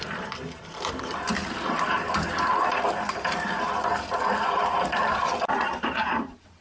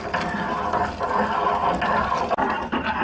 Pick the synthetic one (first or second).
first